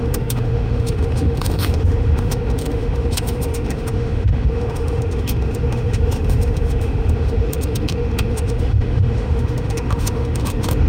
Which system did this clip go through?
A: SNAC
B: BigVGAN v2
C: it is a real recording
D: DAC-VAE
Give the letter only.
D